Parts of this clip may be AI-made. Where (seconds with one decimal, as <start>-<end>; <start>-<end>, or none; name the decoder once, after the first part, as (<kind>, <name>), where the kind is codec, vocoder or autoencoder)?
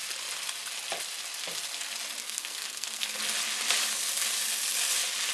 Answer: 2.2-3.2 (codec, SNAC)